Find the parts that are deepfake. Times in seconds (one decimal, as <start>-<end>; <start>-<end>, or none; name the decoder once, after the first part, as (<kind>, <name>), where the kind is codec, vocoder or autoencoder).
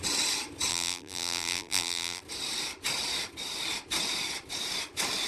0.7-2.2 (vocoder, BigVGAN v2)